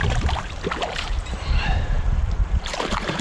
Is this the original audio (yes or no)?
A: no